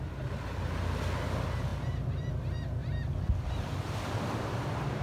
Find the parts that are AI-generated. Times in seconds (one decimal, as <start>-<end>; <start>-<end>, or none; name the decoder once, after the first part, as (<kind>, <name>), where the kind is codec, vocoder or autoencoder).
none